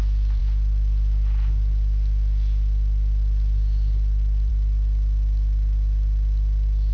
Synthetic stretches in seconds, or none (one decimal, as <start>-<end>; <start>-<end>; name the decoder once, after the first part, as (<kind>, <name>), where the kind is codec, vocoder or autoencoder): none